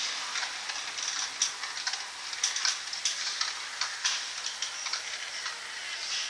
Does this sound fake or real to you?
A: real